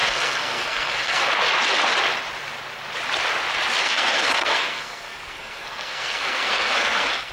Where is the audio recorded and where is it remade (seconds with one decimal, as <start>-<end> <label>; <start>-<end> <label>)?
0.0-1.3 remade; 1.3-3.8 recorded; 3.8-7.3 remade